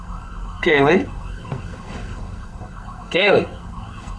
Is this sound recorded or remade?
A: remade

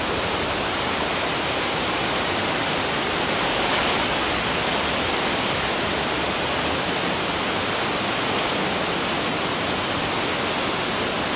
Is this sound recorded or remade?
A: recorded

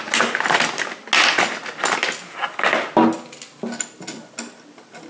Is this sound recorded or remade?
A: recorded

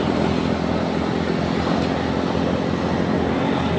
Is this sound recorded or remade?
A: recorded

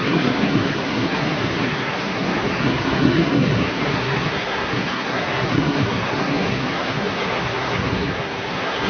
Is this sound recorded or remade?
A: remade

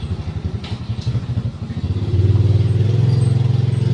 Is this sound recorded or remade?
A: recorded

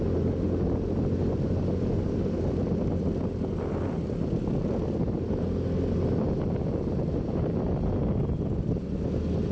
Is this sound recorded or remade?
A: recorded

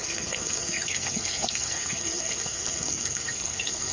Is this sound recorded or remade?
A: remade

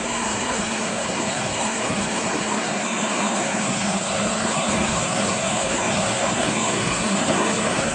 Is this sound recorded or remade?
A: remade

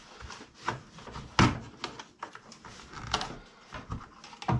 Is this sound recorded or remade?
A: recorded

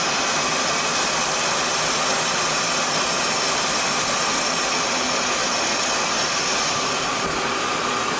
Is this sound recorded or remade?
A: recorded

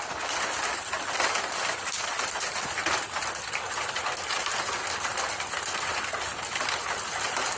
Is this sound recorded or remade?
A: recorded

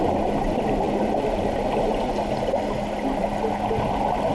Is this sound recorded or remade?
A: recorded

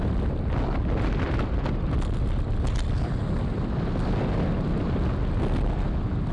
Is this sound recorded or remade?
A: recorded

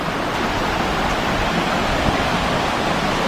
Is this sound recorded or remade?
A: recorded